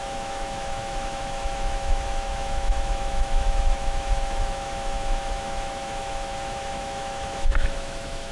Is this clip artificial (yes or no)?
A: yes